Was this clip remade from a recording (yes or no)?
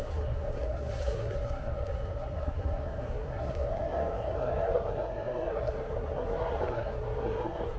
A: yes